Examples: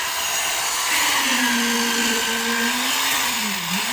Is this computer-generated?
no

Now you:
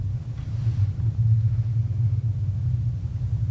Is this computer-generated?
no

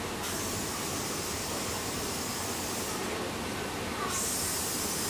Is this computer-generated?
no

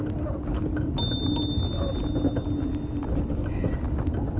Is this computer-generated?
no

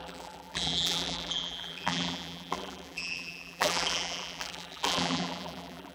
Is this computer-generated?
yes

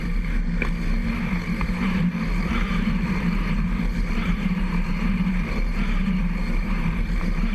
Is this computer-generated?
yes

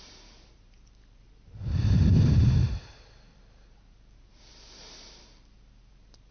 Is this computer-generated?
yes